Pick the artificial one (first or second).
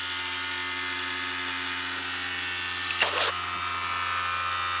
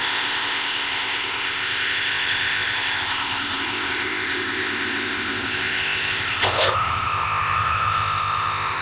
second